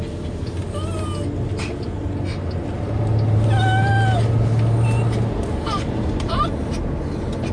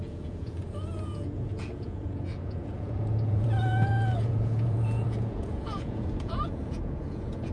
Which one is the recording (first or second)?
first